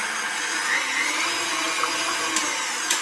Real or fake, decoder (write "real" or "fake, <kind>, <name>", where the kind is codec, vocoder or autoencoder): real